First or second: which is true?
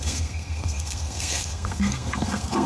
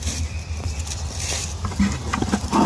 second